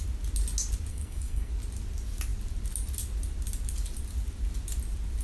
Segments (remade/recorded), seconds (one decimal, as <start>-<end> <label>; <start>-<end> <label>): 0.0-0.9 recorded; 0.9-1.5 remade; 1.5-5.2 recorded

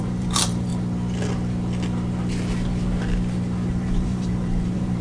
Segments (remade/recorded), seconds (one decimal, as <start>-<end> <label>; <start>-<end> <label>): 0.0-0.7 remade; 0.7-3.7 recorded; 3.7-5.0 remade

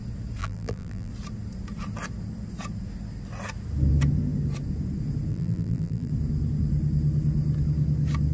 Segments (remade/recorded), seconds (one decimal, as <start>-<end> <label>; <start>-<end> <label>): 0.0-0.4 recorded; 0.4-1.1 remade; 1.1-5.3 recorded; 5.3-6.1 remade; 6.1-8.3 recorded

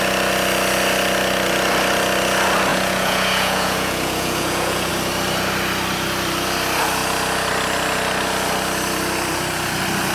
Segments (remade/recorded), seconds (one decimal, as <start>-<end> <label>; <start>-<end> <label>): 0.0-2.7 recorded; 2.7-4.9 remade; 4.9-10.1 recorded

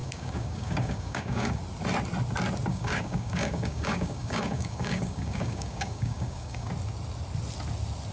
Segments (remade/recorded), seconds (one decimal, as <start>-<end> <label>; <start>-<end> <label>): 0.0-1.6 remade; 1.6-2.7 recorded; 2.7-6.7 remade; 6.7-8.1 recorded